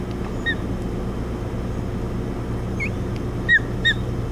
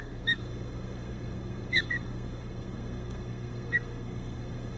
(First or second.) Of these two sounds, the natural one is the first